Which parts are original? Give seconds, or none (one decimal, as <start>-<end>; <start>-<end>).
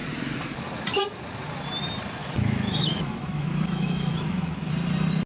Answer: 0.0-2.2; 4.7-5.3